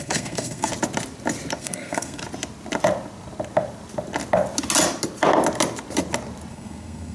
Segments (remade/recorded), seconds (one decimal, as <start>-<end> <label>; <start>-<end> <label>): 0.0-0.7 remade; 0.7-1.6 recorded; 1.6-2.2 remade; 2.2-6.5 recorded; 6.5-7.1 remade